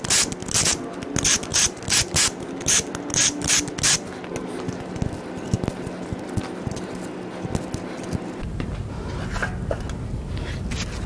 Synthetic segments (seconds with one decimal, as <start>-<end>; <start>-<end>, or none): none